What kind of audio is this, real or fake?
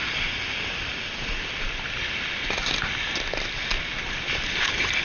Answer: real